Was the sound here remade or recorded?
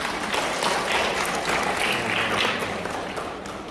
recorded